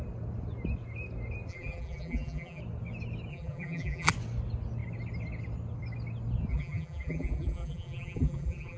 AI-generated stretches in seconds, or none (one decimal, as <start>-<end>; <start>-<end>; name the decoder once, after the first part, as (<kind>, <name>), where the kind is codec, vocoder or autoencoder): 1.5-2.6 (vocoder, BigVGAN v2); 3.3-4.1; 6.5-8.8